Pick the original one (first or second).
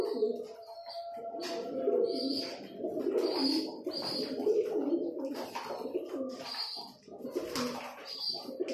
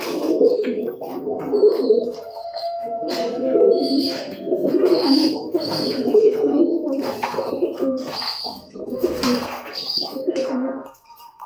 first